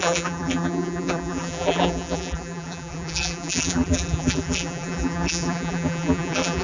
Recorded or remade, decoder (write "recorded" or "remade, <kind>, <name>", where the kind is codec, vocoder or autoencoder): remade, vocoder, BigVGAN v2